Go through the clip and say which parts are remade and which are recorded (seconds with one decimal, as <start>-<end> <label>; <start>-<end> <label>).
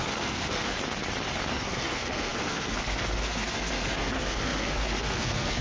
0.0-0.7 remade; 0.7-1.5 recorded; 1.5-5.6 remade